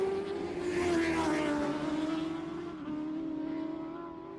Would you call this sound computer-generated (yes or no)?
no